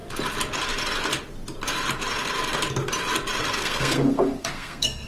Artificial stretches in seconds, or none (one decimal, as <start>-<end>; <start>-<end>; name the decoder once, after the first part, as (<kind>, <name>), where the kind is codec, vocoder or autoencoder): 3.6-5.1 (codec, SNAC)